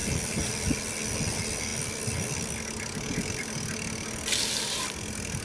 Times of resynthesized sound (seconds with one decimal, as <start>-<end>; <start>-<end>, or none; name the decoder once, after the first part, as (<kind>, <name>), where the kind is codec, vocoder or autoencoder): 0.0-0.5 (vocoder, BigVGAN v2)